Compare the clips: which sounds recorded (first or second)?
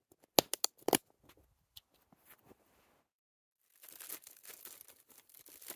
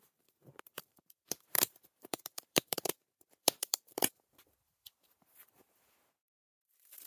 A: first